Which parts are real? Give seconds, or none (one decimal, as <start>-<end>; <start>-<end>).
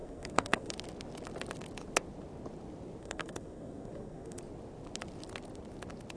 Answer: 0.7-3.0; 4.4-6.2